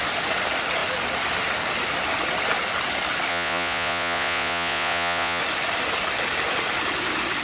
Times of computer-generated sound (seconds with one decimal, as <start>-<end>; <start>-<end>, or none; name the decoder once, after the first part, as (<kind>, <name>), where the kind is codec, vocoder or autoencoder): 3.3-5.4 (vocoder, Vocos)